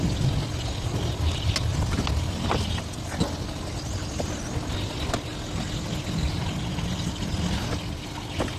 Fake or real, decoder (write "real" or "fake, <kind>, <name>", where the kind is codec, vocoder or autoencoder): real